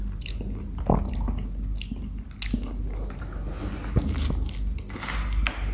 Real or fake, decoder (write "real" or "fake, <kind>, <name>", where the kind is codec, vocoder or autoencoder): real